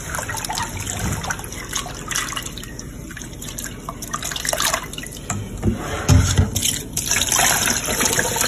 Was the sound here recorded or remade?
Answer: recorded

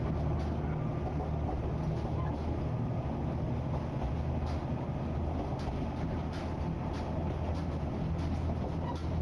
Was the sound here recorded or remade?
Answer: recorded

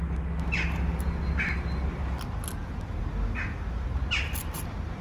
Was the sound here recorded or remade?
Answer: recorded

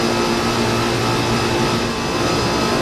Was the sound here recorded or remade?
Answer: recorded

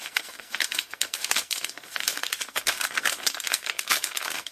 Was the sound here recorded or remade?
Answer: remade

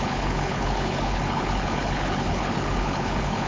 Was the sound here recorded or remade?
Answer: remade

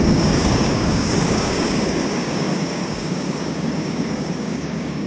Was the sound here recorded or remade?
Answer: remade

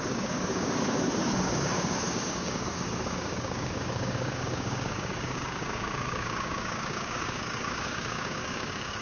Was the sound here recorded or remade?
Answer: remade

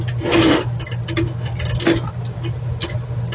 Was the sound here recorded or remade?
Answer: recorded